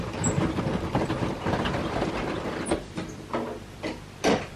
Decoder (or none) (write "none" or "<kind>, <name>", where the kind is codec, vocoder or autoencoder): none